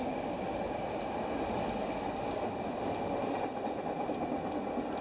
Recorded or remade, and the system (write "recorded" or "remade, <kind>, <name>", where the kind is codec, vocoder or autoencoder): recorded